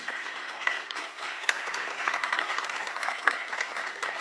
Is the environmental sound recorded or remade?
remade